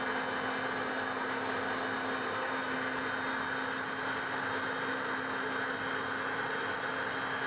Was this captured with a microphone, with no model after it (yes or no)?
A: yes